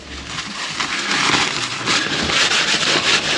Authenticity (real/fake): real